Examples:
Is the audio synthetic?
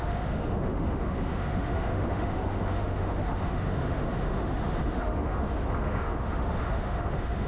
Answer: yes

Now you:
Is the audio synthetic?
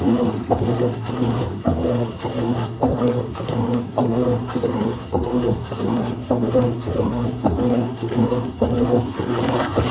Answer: yes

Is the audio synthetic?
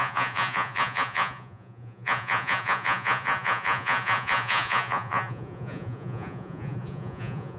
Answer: yes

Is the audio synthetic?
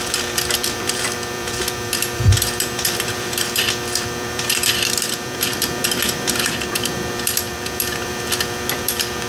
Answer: yes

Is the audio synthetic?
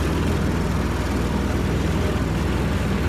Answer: no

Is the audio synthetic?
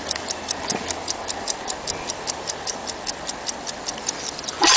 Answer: yes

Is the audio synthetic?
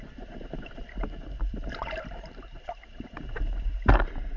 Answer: yes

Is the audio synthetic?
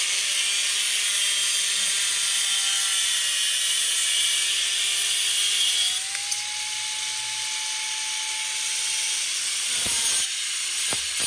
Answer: no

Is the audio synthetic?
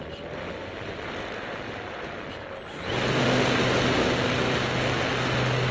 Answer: no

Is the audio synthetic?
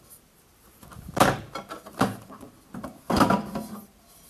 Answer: yes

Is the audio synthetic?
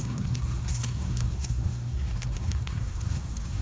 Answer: yes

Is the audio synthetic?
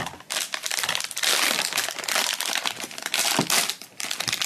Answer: yes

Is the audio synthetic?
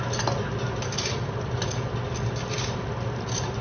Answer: no